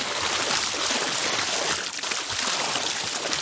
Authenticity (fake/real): real